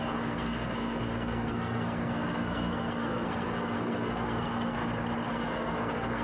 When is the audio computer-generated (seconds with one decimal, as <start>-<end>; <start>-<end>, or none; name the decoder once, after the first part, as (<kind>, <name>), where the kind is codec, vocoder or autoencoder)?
0.0-4.8 (codec, SNAC); 5.3-6.2